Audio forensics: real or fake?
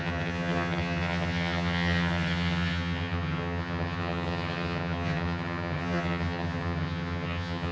fake